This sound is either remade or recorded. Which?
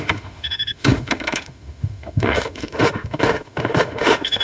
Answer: remade